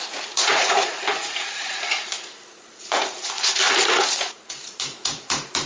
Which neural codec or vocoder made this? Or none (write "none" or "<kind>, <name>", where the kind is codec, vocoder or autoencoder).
vocoder, Vocos